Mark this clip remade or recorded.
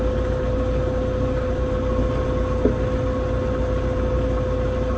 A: recorded